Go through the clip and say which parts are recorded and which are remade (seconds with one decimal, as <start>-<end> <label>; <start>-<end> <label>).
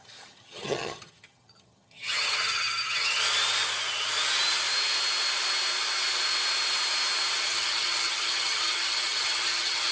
0.0-3.2 remade; 3.2-7.4 recorded; 7.4-9.9 remade